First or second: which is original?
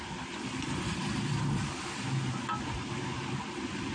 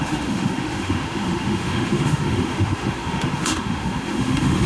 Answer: first